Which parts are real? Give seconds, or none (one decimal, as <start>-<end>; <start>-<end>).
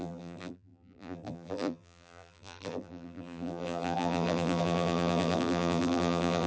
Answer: none